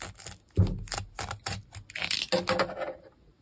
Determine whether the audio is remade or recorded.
recorded